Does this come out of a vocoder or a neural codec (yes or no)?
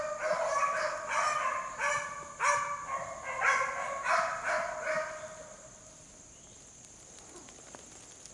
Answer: no